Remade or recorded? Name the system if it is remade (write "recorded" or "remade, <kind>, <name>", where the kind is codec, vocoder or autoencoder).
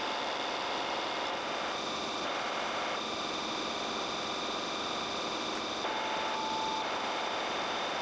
recorded